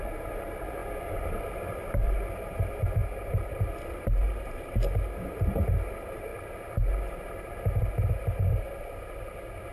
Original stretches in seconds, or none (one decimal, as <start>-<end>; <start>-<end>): 0.0-9.7